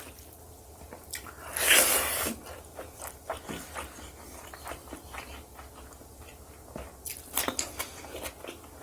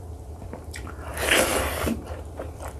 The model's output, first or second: second